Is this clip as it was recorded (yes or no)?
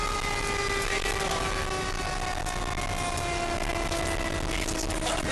yes